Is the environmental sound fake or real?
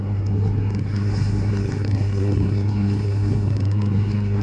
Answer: fake